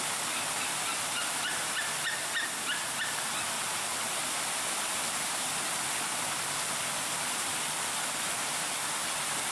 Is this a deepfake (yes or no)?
yes